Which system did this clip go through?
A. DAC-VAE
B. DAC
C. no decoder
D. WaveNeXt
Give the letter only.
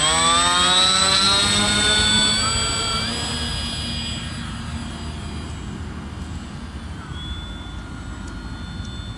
C